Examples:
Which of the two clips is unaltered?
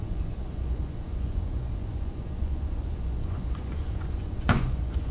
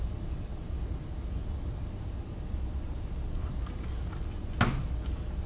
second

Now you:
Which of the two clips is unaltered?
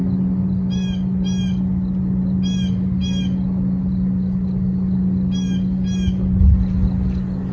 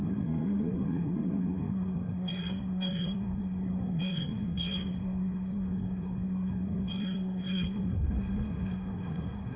first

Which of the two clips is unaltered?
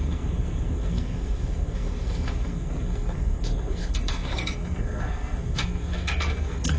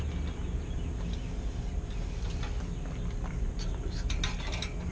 second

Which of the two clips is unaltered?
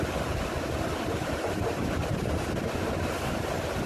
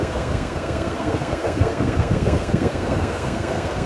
first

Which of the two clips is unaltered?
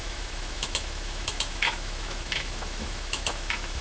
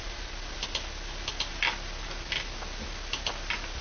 second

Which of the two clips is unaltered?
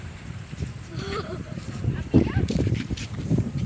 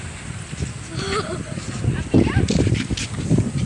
second